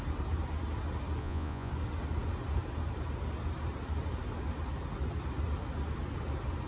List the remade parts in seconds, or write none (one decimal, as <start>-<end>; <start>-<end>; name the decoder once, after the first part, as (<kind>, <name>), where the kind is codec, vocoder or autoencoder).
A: 1.2-1.7 (vocoder, Vocos)